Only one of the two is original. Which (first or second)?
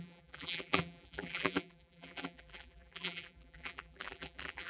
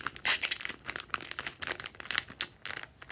second